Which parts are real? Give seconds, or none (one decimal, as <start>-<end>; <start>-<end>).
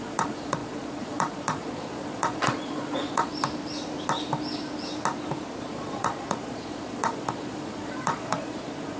3.3-5.6